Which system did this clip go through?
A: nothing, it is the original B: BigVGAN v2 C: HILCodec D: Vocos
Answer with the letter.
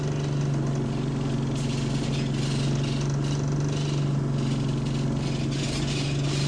A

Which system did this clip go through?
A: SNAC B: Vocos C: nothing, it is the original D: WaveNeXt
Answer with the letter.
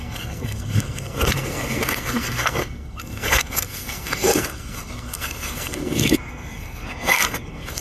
A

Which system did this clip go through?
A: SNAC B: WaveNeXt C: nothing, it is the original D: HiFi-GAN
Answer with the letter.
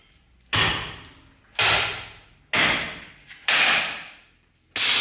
C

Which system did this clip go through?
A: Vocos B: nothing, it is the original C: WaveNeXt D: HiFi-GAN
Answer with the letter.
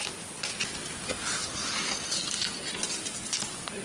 B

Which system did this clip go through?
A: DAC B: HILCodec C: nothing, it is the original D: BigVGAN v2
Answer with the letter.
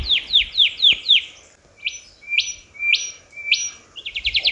C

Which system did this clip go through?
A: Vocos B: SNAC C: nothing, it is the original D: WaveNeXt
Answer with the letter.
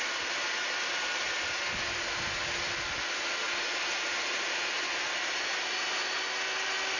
C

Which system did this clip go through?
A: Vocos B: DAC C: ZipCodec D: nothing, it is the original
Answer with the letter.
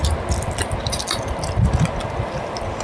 D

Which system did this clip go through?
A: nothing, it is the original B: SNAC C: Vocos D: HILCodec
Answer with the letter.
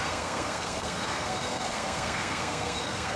B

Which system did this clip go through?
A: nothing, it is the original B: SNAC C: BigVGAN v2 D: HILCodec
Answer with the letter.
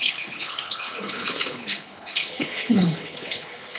D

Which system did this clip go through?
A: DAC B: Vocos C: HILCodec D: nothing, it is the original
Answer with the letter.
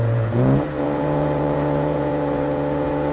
B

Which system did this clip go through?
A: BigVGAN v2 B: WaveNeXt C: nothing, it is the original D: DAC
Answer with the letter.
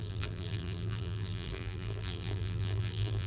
A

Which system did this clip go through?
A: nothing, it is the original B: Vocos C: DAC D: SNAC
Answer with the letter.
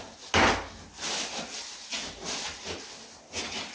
A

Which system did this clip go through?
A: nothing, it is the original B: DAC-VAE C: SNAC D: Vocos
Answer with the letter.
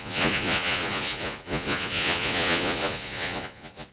D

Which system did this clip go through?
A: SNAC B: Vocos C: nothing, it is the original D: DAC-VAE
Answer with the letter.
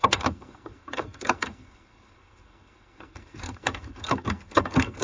A